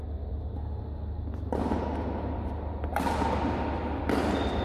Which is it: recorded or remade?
recorded